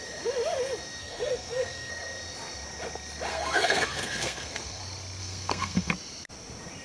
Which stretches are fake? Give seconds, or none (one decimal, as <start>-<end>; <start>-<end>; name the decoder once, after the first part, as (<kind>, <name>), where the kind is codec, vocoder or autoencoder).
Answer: 1.0-1.9 (codec, SNAC); 3.3-4.8; 5.2-5.9